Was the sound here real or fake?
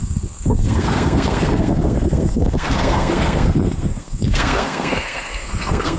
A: fake